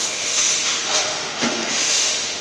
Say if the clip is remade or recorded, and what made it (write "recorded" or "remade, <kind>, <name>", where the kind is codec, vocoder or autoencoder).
remade, autoencoder, DAC-VAE